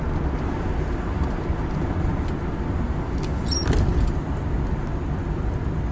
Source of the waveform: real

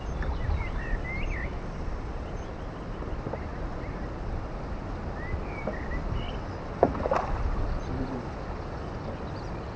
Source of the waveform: real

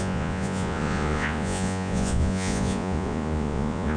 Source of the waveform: fake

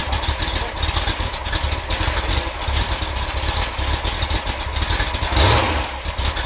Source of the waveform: real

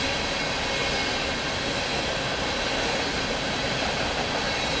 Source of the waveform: real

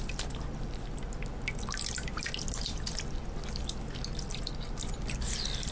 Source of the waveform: real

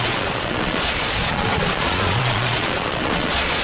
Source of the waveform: fake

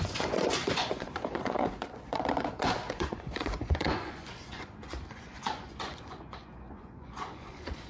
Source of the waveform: fake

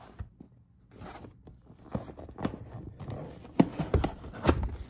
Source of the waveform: real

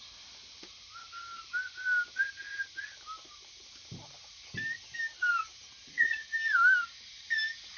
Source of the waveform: real